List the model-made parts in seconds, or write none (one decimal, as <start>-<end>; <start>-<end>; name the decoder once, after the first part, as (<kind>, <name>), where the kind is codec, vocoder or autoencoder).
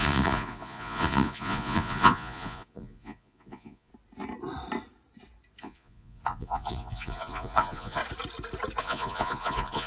0.0-3.9 (vocoder, Vocos); 5.6-8.0; 8.8-9.9